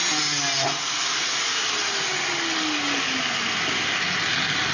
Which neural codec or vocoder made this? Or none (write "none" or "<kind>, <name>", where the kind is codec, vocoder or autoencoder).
none